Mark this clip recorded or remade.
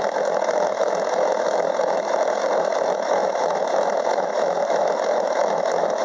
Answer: remade